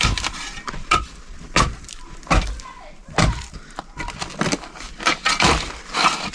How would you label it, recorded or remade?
recorded